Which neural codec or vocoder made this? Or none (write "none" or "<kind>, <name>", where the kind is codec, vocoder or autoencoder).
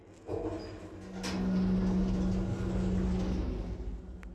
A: none